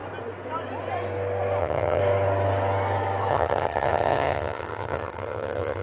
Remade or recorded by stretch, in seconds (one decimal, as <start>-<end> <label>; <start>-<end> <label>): 0.0-1.6 recorded; 1.6-2.0 remade; 2.0-3.3 recorded; 3.3-5.8 remade